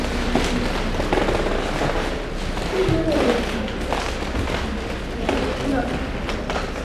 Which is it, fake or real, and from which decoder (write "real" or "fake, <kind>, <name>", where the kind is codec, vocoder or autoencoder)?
real